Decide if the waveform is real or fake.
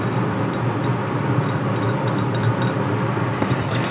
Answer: real